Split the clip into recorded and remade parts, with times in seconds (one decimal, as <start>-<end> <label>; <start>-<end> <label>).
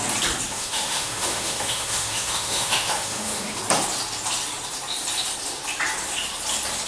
0.0-0.5 recorded; 0.5-3.6 remade; 3.6-6.9 recorded